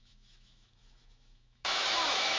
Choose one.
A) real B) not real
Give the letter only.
B